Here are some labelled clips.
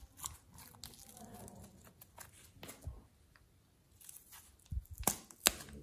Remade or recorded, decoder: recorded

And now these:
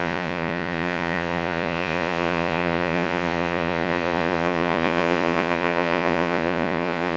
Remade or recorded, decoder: remade, vocoder, Vocos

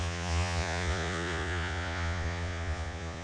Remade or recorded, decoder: remade, vocoder, Vocos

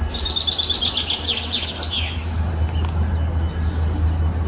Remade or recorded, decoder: recorded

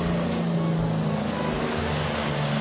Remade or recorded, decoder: recorded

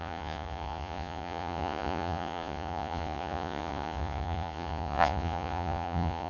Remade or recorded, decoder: remade, vocoder, Vocos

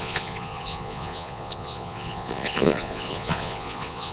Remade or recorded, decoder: remade, vocoder, Vocos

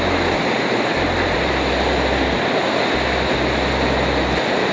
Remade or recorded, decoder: recorded